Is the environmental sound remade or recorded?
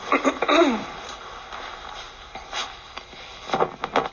recorded